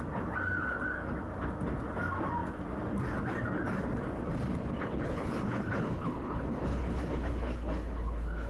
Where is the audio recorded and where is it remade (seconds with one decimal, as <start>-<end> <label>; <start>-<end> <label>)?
0.0-4.8 recorded; 4.8-8.5 remade

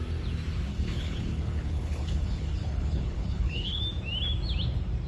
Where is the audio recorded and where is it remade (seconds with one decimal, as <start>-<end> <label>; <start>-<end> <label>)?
0.0-0.7 recorded; 0.7-3.8 remade; 3.8-5.1 recorded

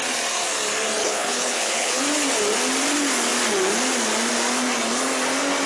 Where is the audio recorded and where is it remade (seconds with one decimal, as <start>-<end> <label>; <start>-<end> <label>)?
0.0-1.0 recorded; 1.0-2.0 remade; 2.0-5.7 recorded

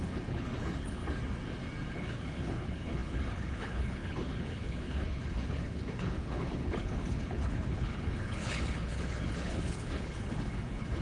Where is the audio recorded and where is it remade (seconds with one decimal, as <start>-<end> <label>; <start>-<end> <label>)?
0.0-1.0 remade; 1.0-1.9 recorded; 1.9-11.0 remade

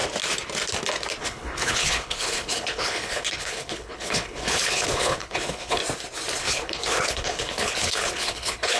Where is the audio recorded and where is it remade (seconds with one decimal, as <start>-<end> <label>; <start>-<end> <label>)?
0.0-1.2 recorded; 1.2-5.8 remade; 5.8-6.4 recorded; 6.4-8.8 remade